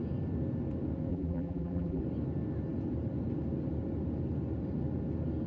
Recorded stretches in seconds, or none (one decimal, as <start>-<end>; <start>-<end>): 0.0-1.1; 2.0-5.5